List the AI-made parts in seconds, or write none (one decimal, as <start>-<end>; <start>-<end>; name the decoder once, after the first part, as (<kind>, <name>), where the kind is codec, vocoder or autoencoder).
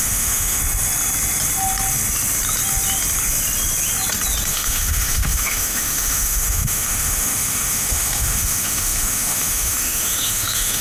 0.0-0.6 (autoencoder, DAC-VAE); 4.5-10.8